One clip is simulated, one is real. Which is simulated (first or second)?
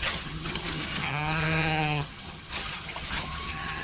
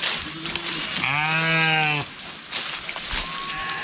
first